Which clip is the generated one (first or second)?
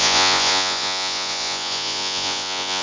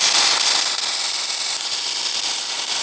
first